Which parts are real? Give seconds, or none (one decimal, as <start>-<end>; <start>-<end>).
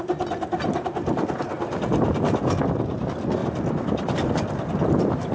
0.0-5.3